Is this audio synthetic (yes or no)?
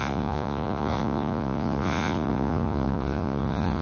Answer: yes